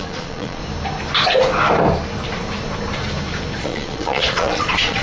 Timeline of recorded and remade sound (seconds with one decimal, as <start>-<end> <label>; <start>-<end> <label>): 0.0-0.6 remade; 0.6-3.6 recorded; 3.6-5.0 remade